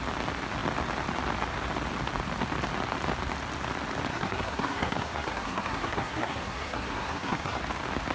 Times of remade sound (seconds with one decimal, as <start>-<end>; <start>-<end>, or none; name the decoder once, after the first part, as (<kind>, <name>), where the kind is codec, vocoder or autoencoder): 4.1-7.6 (codec, SNAC)